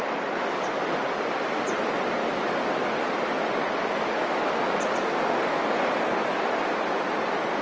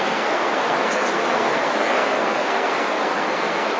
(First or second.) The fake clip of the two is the second